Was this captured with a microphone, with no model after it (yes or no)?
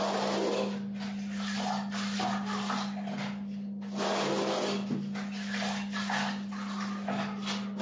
yes